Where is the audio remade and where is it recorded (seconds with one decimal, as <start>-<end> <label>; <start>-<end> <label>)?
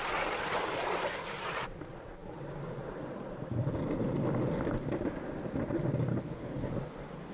0.0-6.1 recorded; 6.1-6.7 remade; 6.7-7.3 recorded